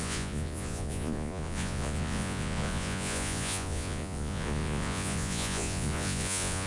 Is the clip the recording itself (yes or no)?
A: no